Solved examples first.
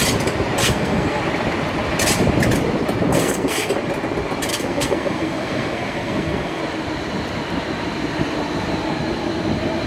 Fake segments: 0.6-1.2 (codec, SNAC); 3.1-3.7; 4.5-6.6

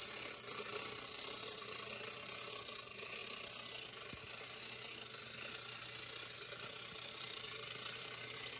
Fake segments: none